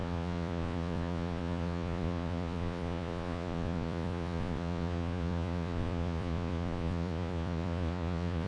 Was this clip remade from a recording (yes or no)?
yes